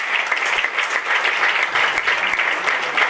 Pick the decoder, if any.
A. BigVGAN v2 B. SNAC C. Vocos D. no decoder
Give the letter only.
D